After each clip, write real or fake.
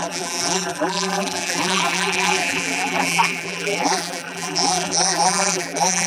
fake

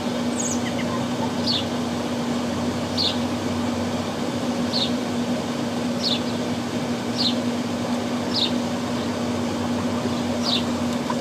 real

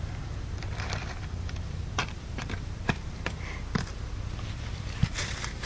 fake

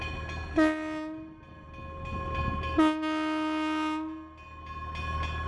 real